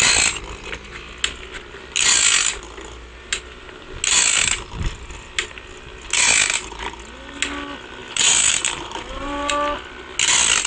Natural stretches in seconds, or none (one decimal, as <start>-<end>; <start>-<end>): 0.0-8.0; 9.5-10.7